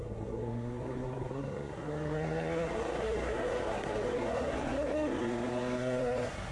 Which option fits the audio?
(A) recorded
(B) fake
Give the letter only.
B